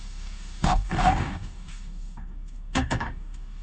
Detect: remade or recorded remade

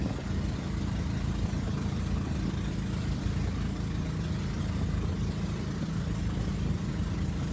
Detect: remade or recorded recorded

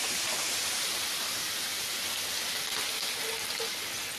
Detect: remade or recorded recorded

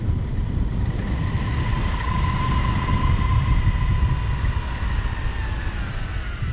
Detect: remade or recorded recorded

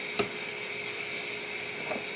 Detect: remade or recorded recorded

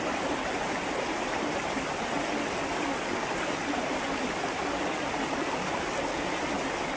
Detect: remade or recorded recorded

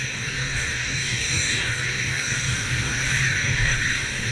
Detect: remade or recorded remade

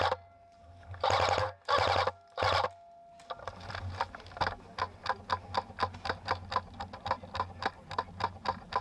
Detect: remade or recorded recorded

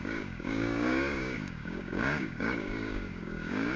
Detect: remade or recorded remade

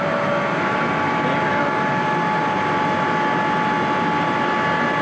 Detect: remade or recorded recorded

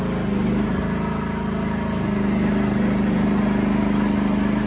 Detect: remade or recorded recorded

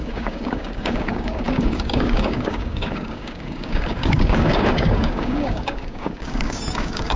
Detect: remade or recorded remade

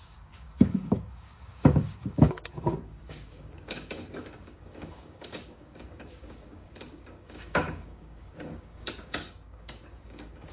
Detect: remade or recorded remade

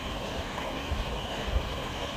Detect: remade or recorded remade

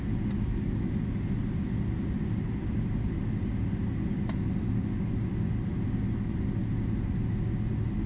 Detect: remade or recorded recorded